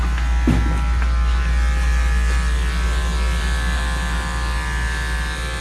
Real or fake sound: real